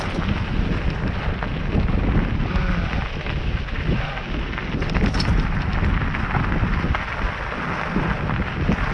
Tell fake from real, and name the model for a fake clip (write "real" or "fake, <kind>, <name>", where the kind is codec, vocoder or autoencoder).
real